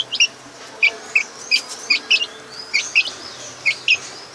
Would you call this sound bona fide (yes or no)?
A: yes